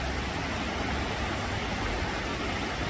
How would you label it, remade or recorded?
recorded